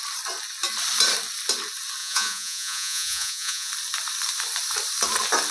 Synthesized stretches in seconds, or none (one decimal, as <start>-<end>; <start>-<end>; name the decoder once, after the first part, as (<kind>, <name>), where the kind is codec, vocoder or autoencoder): 2.0-3.7 (vocoder, Vocos)